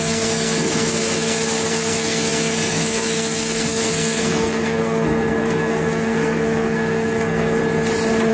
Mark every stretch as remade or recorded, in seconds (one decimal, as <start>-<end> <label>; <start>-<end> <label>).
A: 0.0-7.6 remade; 7.6-8.3 recorded